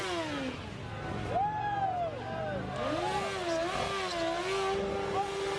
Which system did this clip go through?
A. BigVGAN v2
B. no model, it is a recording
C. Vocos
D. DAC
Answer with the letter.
B